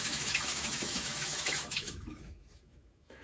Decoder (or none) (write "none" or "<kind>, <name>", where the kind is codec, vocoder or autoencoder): autoencoder, DAC-VAE